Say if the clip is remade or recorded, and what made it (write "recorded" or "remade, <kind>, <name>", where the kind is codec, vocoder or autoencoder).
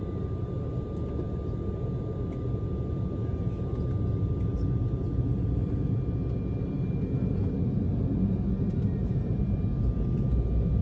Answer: recorded